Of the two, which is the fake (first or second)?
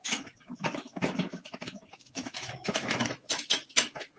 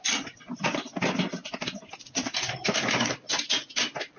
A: first